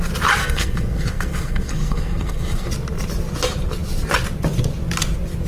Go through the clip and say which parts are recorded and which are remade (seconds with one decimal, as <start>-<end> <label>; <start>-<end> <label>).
0.0-0.4 recorded; 0.4-2.7 remade; 2.7-5.5 recorded